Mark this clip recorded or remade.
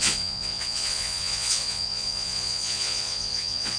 remade